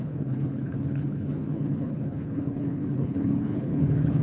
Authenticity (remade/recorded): remade